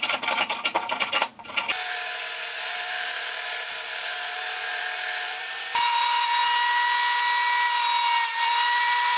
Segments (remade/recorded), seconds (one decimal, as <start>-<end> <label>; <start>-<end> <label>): 0.0-6.4 remade; 6.4-8.3 recorded; 8.3-9.2 remade